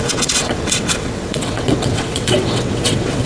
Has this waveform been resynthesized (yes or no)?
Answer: yes